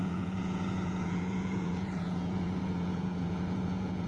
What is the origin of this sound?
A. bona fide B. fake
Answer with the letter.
B